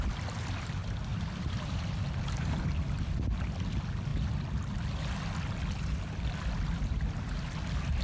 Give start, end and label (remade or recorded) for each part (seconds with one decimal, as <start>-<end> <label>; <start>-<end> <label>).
0.0-1.1 recorded; 1.1-3.2 remade; 3.2-8.0 recorded